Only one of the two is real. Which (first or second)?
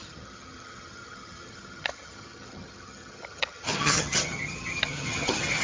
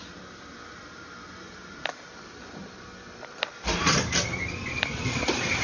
second